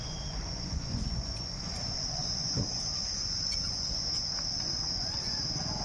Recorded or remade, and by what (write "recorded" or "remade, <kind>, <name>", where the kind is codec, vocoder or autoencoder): remade, vocoder, Vocos